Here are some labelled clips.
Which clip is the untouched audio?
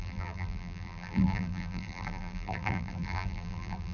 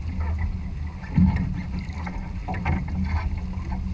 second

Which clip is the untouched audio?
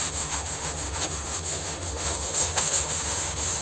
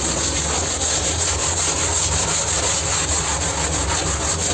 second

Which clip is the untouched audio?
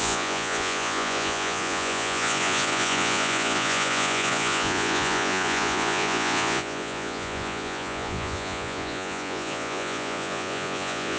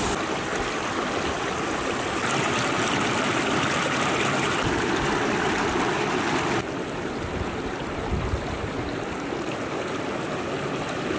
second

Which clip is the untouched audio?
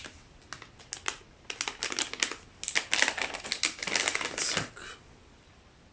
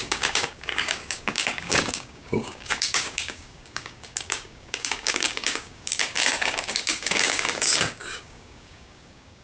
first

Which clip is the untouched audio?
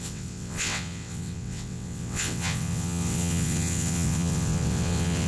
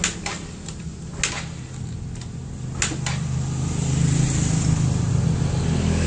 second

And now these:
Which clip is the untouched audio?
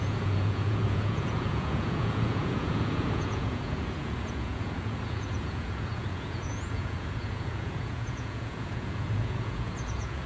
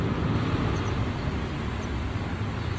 second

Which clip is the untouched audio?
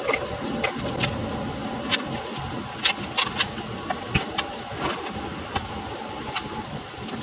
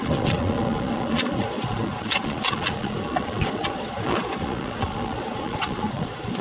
first